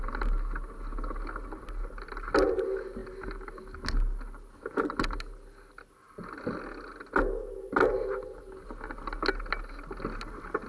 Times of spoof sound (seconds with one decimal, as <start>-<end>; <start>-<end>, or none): none